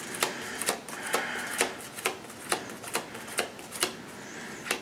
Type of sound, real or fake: real